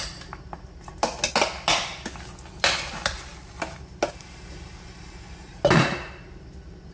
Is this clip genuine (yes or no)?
yes